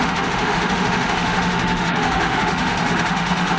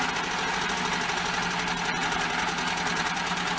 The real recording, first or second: second